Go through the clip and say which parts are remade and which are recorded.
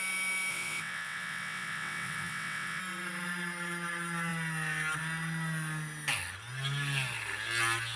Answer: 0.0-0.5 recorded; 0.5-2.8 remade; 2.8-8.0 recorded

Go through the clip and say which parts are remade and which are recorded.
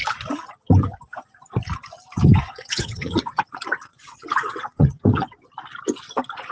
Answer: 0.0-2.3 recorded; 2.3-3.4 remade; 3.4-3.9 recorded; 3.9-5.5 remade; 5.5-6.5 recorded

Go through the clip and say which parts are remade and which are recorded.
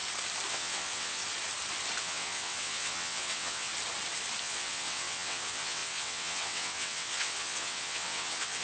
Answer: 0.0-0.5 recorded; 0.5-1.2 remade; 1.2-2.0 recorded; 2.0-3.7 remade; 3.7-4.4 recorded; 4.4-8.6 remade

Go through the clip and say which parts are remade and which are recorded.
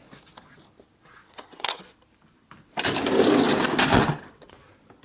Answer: 0.0-1.2 recorded; 1.2-1.8 remade; 1.8-3.9 recorded; 3.9-4.5 remade; 4.5-5.0 recorded